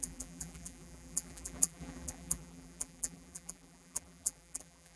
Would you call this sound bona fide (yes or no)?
no